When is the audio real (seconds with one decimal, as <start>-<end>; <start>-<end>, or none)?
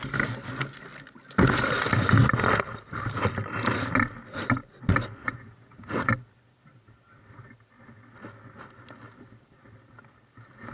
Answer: 0.0-5.2; 6.1-10.7